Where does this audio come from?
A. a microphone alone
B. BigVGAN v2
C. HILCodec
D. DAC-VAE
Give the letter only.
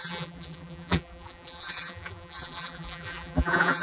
B